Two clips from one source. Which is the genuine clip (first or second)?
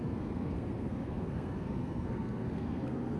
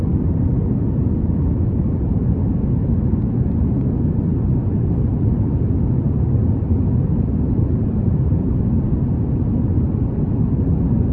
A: second